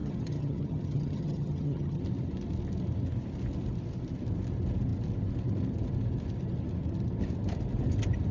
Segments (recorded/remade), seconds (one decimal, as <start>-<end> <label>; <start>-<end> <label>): 0.0-2.0 remade; 2.0-8.3 recorded